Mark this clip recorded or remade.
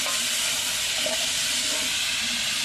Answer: recorded